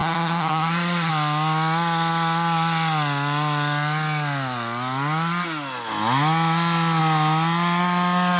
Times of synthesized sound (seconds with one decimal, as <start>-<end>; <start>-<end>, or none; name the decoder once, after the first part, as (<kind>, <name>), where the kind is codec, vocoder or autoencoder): 0.0-1.1 (vocoder, HiFi-GAN)